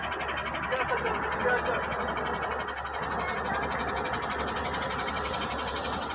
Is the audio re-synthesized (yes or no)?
no